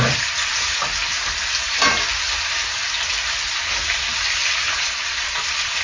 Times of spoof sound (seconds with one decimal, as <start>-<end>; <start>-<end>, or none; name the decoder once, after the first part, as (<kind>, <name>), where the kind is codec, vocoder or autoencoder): 4.6-5.8 (vocoder, Vocos)